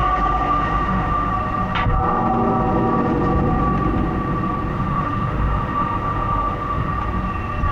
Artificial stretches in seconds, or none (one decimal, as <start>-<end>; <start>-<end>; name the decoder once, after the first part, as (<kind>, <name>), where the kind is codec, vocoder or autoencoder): 0.0-1.3 (autoencoder, DAC-VAE); 4.7-6.9